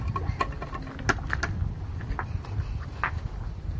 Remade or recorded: recorded